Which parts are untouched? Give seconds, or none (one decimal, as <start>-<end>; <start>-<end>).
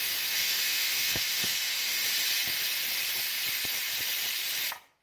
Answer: 2.0-5.0